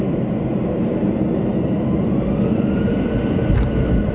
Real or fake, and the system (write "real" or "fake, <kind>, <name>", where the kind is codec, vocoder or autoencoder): real